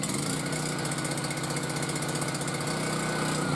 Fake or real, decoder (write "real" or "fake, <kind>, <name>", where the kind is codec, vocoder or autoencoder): real